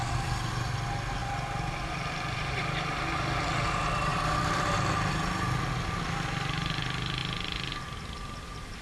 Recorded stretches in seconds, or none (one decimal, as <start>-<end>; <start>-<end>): 0.0-8.8